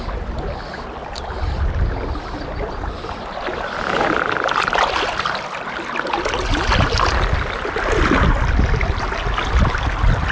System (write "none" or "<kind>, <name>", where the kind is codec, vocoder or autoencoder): none